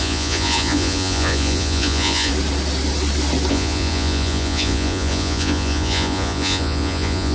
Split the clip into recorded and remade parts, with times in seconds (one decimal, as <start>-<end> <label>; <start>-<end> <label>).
0.0-2.3 remade; 2.3-3.5 recorded; 3.5-7.3 remade